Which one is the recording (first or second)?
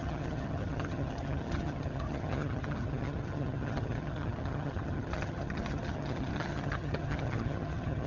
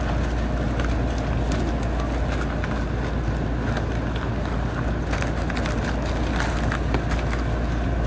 second